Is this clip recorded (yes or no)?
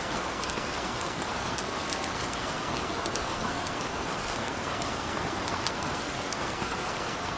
no